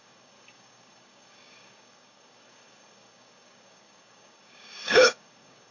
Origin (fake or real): fake